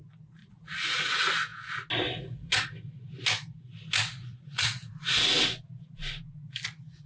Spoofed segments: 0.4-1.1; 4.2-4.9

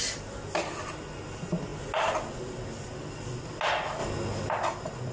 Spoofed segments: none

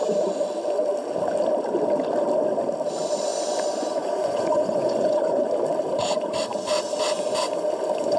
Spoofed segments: 3.3-5.5

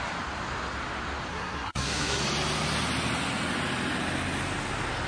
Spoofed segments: 1.3-2.2

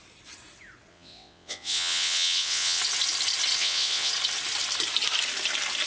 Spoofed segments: 0.9-2.8; 3.6-4.1

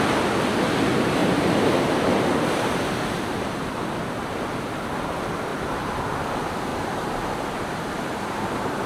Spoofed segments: 1.2-4.3; 5.5-6.1; 6.7-8.9

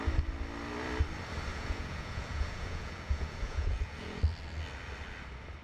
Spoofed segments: 1.5-4.2